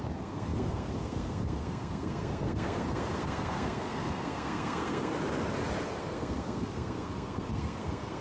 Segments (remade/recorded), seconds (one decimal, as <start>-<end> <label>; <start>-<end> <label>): 0.0-5.1 remade; 5.1-6.0 recorded; 6.0-8.2 remade